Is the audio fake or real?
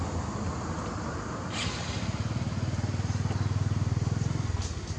real